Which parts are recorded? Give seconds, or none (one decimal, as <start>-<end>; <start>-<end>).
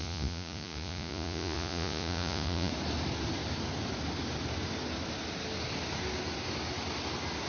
2.7-7.5